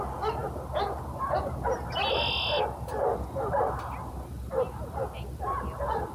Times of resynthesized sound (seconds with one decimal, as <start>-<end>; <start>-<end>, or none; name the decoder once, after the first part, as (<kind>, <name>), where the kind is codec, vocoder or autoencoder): none